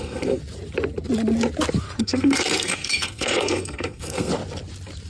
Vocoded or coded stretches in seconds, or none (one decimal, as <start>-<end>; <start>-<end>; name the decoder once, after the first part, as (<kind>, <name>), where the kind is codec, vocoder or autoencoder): 0.0-0.4 (codec, SNAC); 2.0-4.3